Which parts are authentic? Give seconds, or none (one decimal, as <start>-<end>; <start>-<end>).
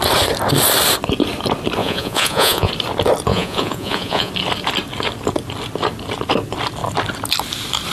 0.0-1.8; 2.7-3.3; 4.3-7.9